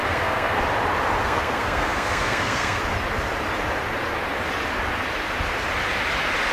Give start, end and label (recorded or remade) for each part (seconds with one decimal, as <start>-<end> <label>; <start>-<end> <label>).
0.0-0.6 remade; 0.6-1.2 recorded; 1.2-2.8 remade; 2.8-6.5 recorded